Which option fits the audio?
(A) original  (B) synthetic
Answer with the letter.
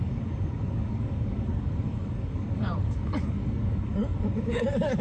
B